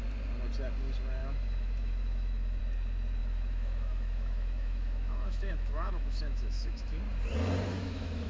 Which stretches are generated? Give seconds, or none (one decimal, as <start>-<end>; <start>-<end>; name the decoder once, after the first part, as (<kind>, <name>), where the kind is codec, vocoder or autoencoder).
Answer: 1.2-2.6 (autoencoder, DAC-VAE); 3.2-7.0; 7.7-8.3